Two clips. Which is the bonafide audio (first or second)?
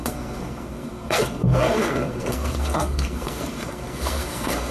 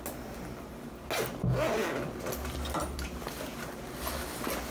second